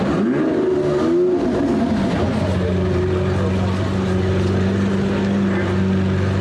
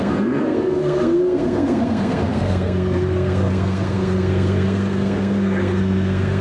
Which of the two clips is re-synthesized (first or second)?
second